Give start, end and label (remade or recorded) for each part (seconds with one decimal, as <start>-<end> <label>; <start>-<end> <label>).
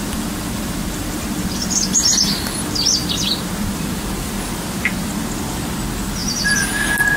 0.0-4.3 remade; 4.3-6.2 recorded; 6.2-6.7 remade; 6.7-7.2 recorded